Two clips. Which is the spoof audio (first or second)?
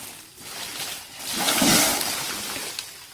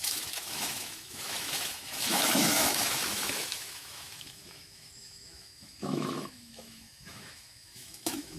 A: second